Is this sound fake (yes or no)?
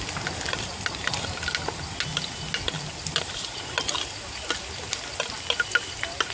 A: no